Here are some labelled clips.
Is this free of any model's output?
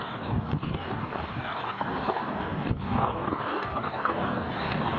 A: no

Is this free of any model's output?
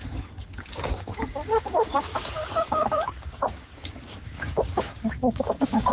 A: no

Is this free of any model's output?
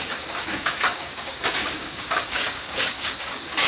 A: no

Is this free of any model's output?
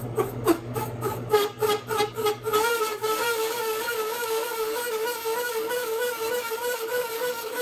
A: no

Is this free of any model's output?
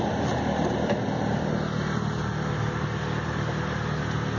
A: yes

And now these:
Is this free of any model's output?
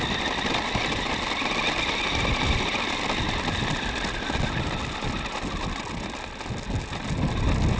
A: yes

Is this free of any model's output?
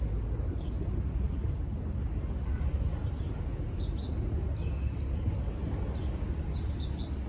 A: yes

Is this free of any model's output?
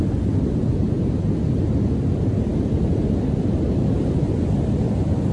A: yes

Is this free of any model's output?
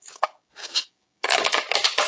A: no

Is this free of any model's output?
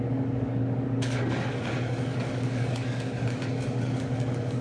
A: no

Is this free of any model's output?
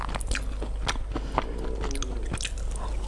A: yes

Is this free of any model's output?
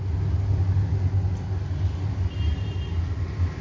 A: yes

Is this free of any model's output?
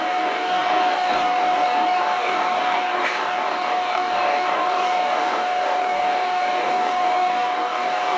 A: no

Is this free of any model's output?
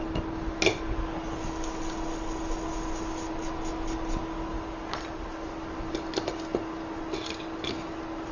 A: yes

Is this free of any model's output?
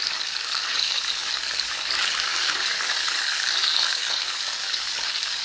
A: no